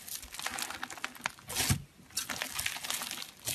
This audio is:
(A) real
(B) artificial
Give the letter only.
A